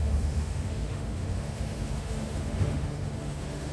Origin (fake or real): fake